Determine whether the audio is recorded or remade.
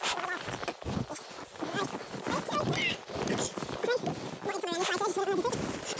recorded